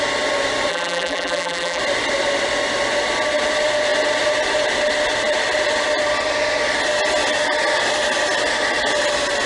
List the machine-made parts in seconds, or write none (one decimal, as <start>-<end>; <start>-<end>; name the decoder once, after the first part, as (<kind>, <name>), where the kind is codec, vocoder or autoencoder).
0.7-1.8 (vocoder, BigVGAN v2)